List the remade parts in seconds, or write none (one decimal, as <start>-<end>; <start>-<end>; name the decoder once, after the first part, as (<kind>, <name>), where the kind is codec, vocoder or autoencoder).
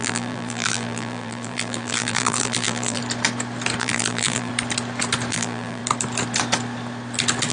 0.0-3.0 (vocoder, BigVGAN v2); 3.8-4.5; 5.3-5.8